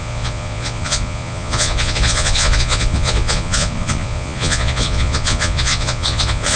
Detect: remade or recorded remade